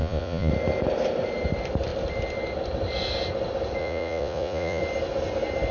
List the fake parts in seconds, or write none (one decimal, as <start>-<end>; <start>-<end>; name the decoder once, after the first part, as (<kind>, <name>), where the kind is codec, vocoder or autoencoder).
0.0-0.5 (vocoder, Vocos); 3.8-4.8